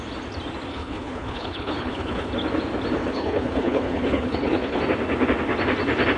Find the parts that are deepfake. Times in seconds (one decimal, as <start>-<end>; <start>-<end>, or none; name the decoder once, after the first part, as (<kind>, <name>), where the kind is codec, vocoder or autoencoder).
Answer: 0.7-2.3 (codec, HILCodec); 3.0-4.8